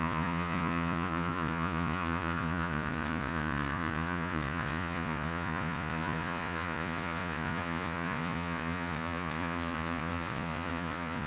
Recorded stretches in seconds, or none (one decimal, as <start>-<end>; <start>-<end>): none